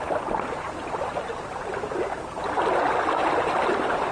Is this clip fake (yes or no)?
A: no